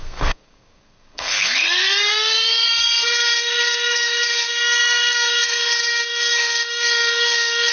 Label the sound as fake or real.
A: fake